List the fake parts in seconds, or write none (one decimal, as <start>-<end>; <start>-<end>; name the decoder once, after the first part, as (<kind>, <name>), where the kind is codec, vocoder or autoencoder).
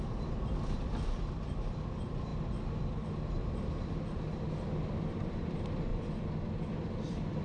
0.0-2.3 (vocoder, BigVGAN v2); 5.1-5.9; 6.7-7.4